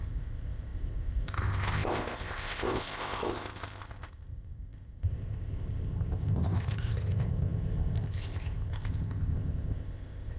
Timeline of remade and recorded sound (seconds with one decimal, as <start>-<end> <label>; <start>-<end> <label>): 0.0-10.4 remade